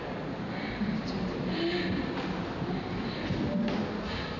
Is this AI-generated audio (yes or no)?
no